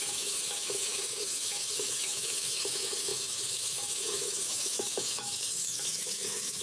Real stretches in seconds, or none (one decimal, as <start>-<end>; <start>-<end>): none

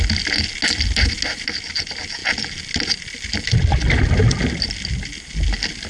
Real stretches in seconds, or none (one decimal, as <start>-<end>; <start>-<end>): 0.0-5.9